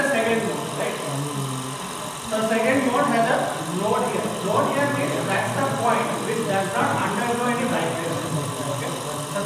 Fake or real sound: real